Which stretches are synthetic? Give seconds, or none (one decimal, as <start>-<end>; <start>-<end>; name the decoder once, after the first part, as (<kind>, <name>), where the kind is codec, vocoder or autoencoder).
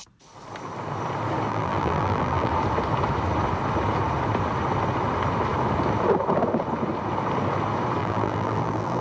1.5-2.5 (vocoder, BigVGAN v2); 8.0-9.0